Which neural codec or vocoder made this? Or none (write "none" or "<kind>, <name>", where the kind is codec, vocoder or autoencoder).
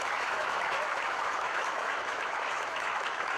autoencoder, DAC-VAE